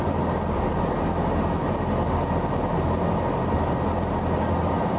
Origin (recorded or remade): recorded